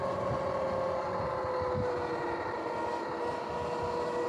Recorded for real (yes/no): yes